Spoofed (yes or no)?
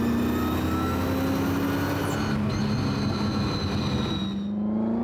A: no